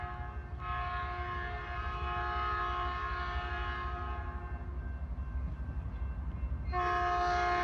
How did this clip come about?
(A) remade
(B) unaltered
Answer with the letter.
B